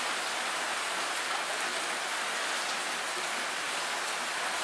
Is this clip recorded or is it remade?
recorded